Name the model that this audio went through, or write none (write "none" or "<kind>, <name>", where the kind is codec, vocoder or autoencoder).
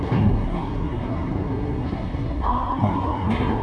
codec, SNAC